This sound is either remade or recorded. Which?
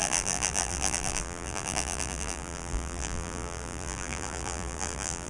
remade